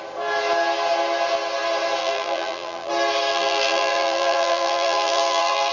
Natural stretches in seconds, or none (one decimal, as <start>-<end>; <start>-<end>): 0.0-2.0; 2.9-3.3